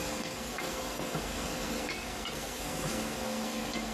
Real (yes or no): no